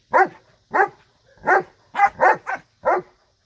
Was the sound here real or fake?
real